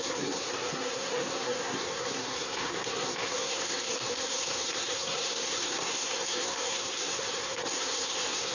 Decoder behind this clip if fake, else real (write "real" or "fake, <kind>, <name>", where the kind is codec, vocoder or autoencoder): fake, codec, SNAC